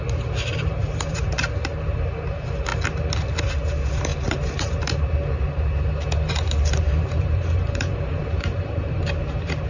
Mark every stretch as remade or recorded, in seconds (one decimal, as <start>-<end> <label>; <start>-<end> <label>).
0.0-2.7 remade; 2.7-3.4 recorded; 3.4-9.7 remade